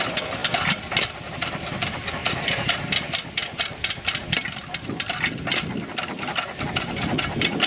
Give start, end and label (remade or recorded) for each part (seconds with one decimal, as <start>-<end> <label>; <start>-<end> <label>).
0.0-7.7 recorded